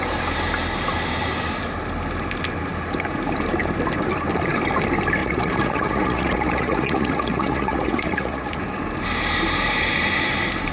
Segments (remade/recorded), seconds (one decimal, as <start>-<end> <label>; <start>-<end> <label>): 0.0-5.2 recorded; 5.2-8.6 remade; 8.6-10.7 recorded

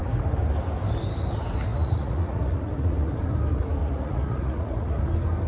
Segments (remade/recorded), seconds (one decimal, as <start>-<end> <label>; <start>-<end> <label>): 0.0-1.7 recorded; 1.7-3.2 remade; 3.2-3.8 recorded; 3.8-5.1 remade; 5.1-5.5 recorded

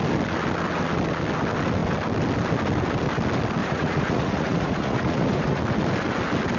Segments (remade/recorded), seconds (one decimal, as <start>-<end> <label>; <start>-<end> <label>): 0.0-3.6 recorded; 3.6-5.6 remade; 5.6-6.6 recorded

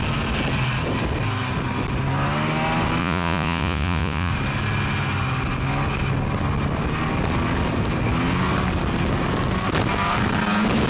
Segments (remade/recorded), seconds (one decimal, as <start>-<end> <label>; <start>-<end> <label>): 0.0-3.0 recorded; 3.0-4.3 remade; 4.3-10.9 recorded

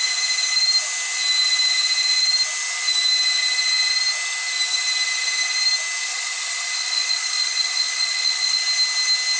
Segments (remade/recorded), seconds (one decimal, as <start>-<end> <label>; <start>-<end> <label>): 0.0-6.0 recorded; 6.0-8.6 remade; 8.6-9.4 recorded

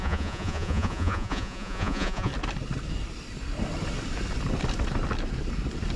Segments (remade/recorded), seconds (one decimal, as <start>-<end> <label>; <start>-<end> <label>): 0.0-2.3 remade; 2.3-6.0 recorded